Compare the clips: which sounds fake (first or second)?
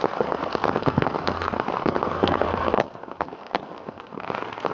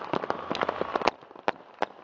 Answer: first